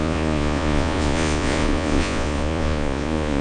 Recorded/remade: remade